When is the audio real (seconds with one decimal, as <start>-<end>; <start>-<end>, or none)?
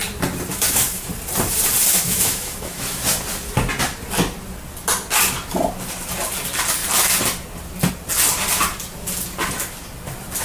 0.0-0.5; 1.1-1.9; 3.0-10.4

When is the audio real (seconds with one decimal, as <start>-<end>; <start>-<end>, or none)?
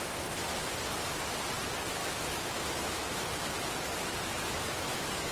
0.0-2.0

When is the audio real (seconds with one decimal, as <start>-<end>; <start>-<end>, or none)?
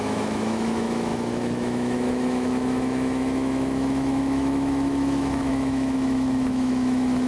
none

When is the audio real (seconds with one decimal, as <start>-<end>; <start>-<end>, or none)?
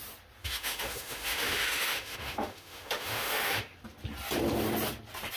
0.0-0.4; 3.6-5.4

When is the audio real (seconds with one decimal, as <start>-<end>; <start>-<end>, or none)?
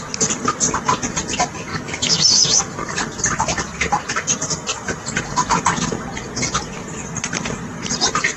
0.0-1.7; 2.6-8.4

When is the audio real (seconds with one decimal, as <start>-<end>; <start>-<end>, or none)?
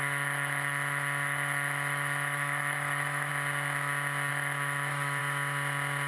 3.3-4.3; 5.2-6.1